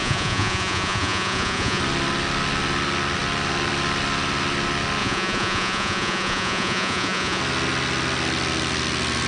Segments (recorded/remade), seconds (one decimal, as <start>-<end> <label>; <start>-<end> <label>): 0.0-1.8 remade; 1.8-5.0 recorded; 5.0-7.4 remade; 7.4-9.3 recorded